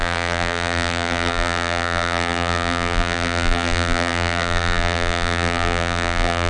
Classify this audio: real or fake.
fake